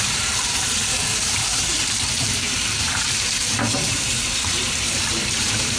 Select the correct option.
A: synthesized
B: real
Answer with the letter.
A